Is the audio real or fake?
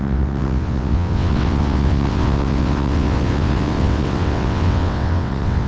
fake